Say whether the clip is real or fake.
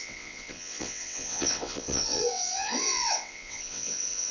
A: fake